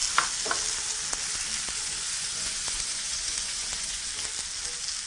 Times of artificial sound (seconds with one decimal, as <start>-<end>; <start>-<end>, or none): 1.8-4.1